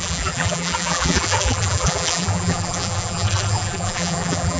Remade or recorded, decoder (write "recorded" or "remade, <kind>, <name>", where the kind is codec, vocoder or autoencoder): remade, vocoder, BigVGAN v2